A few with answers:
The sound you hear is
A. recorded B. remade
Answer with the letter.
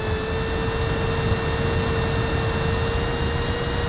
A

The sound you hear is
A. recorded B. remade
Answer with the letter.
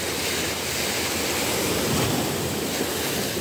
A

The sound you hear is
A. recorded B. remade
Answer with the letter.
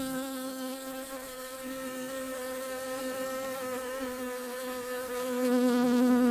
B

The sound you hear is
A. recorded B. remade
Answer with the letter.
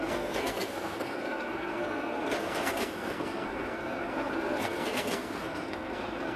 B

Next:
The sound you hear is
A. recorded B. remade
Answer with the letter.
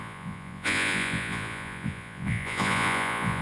B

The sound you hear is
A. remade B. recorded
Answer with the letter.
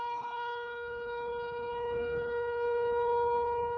A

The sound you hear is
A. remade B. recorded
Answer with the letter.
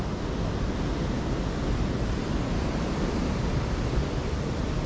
B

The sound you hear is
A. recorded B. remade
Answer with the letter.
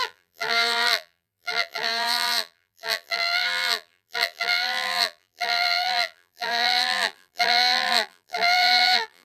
B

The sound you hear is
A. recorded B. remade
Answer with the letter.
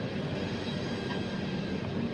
A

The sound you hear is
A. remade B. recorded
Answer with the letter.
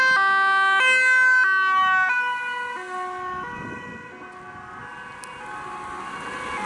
B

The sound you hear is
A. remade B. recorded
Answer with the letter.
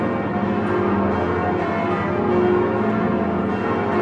B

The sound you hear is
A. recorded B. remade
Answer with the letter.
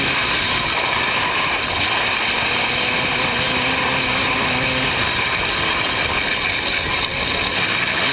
A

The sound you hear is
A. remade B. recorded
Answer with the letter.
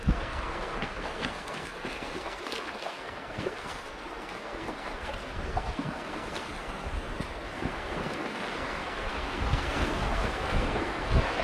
A